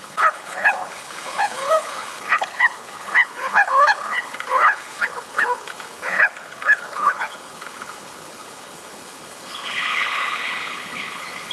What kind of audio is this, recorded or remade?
remade